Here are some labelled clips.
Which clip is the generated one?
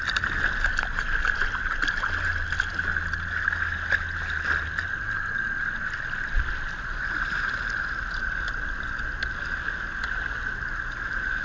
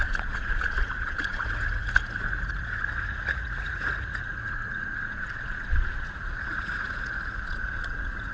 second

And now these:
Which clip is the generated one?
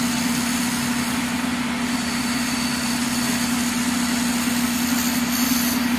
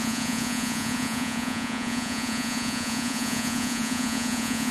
second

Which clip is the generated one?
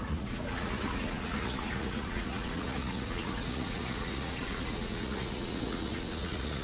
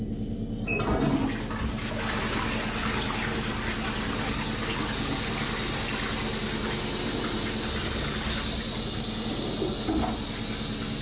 first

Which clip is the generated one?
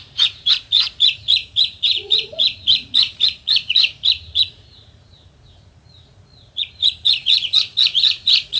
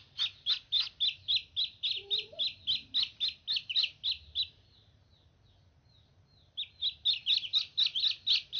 first